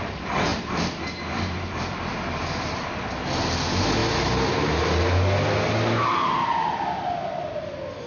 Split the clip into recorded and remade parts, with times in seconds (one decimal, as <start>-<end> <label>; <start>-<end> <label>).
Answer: 0.0-0.5 recorded; 0.5-3.0 remade; 3.0-8.1 recorded

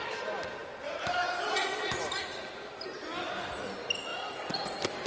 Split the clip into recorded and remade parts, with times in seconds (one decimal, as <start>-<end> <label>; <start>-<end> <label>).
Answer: 0.0-0.6 recorded; 0.6-3.5 remade; 3.5-4.1 recorded; 4.1-5.1 remade

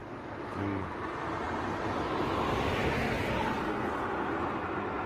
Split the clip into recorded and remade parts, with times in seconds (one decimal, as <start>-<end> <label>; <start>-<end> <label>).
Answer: 0.0-1.4 remade; 1.4-5.1 recorded